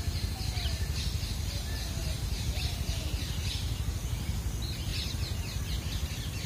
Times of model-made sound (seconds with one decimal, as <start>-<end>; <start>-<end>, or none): 2.0-2.7; 4.9-5.6